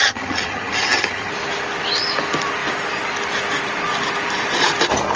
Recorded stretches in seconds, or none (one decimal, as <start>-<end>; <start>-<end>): 1.3-5.2

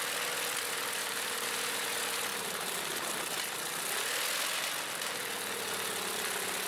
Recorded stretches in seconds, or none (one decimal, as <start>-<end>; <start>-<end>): 0.0-1.0; 1.8-6.7

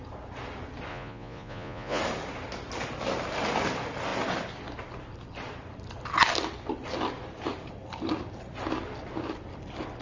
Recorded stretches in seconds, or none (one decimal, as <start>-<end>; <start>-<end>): 0.0-0.9; 2.0-10.0

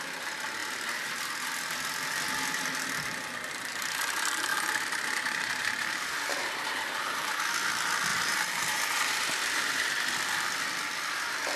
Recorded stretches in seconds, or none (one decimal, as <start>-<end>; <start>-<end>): 0.0-0.6; 1.2-4.5; 7.3-8.1; 9.9-11.6

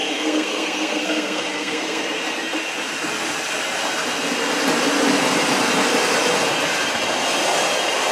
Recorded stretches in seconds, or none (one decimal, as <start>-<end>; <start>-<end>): 2.0-8.1

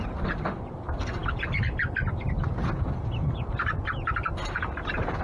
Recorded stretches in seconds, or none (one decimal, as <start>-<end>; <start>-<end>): 0.0-5.2